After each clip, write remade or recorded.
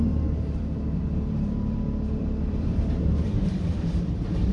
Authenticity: remade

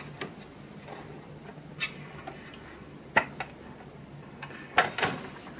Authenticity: recorded